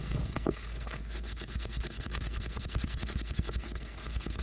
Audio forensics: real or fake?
fake